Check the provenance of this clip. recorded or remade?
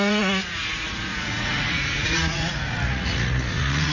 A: remade